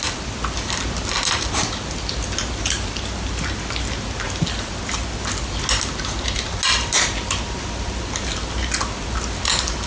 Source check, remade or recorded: recorded